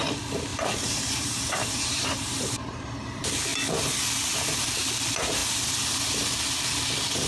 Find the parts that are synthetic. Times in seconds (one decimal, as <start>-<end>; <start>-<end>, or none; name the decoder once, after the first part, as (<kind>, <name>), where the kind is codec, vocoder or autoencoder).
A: 0.5-2.9 (vocoder, BigVGAN v2)